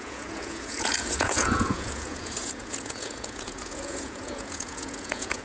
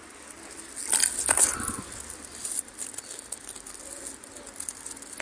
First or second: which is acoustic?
second